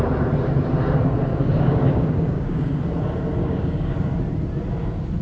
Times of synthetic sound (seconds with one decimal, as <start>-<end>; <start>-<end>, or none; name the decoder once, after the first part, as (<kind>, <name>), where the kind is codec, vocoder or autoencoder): 1.3-2.8 (codec, DAC); 3.4-3.9